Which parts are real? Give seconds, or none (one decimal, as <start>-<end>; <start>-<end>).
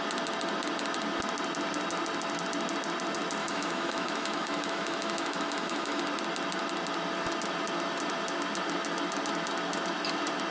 0.0-3.4; 6.0-10.5